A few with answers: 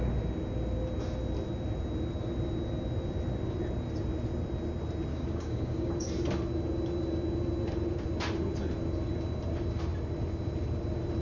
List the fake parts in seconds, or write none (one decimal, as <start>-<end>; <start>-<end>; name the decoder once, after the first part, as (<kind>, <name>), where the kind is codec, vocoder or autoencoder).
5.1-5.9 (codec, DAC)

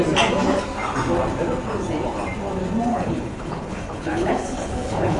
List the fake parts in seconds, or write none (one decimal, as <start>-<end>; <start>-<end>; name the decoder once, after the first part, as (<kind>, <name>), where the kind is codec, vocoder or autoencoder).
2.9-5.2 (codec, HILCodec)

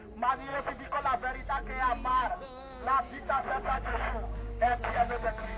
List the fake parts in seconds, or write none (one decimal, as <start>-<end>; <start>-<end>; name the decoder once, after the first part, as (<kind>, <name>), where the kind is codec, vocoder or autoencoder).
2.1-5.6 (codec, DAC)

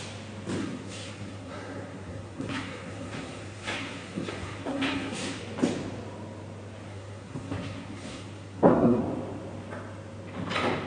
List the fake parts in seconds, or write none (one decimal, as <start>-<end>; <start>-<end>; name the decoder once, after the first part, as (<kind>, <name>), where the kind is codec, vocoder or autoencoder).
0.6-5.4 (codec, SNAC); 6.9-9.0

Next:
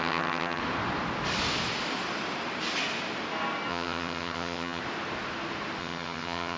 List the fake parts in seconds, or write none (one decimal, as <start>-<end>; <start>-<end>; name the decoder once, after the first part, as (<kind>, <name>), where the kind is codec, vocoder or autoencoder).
0.0-0.6 (vocoder, HiFi-GAN); 3.7-4.8; 5.8-6.6

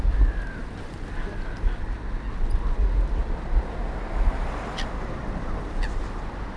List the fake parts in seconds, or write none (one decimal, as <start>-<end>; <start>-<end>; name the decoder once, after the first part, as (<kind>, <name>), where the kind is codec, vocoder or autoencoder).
none

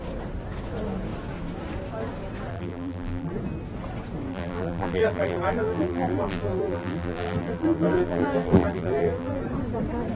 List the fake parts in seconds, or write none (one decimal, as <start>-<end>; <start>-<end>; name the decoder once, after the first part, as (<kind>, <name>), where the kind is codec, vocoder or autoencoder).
2.5-3.3 (vocoder, BigVGAN v2); 4.3-9.4

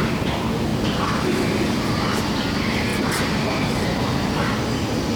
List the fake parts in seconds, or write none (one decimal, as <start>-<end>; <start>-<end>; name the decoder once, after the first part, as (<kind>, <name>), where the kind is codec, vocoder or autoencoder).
2.9-4.6 (vocoder, BigVGAN v2)